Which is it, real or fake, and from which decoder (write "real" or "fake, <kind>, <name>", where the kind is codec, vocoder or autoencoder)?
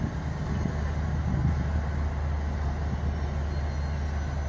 real